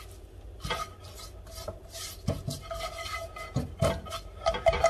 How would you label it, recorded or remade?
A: recorded